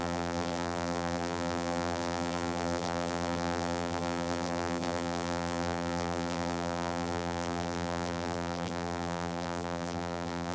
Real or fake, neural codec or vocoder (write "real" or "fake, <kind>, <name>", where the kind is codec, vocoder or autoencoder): fake, vocoder, BigVGAN v2